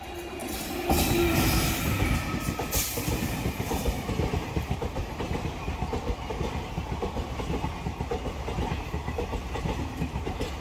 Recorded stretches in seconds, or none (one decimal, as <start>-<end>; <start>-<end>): 0.0-10.6